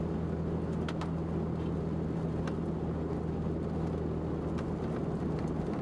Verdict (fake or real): real